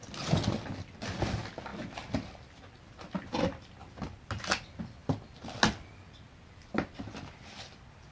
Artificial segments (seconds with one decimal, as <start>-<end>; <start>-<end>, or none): none